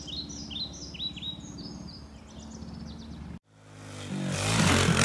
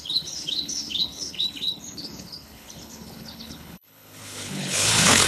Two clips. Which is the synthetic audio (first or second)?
second